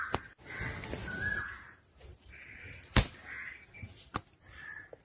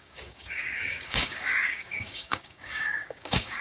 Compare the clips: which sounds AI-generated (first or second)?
second